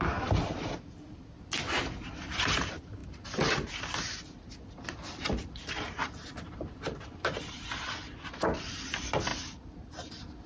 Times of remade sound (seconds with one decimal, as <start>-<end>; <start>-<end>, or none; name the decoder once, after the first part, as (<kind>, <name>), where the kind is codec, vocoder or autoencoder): 9.3-10.1 (vocoder, BigVGAN v2)